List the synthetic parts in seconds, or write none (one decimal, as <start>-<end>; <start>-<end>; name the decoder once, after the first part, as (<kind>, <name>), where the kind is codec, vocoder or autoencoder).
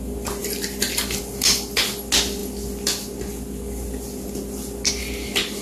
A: none